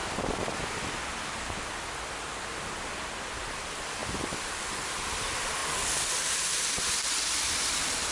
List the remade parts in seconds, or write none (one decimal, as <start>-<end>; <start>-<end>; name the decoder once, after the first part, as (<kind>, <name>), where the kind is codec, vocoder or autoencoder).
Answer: 3.5-8.1 (vocoder, BigVGAN v2)